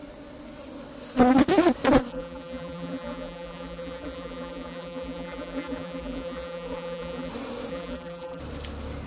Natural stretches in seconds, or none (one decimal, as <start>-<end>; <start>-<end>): 0.0-2.1; 7.3-7.7; 8.4-9.1